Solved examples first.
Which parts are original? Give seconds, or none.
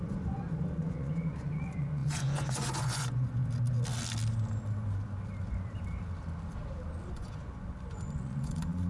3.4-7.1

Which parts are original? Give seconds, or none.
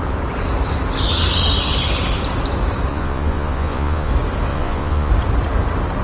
0.0-2.9; 4.1-4.5; 5.1-6.0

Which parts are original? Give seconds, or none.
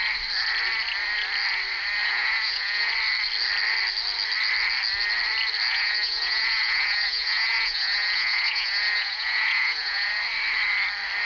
0.0-2.0; 2.9-5.7; 10.2-11.2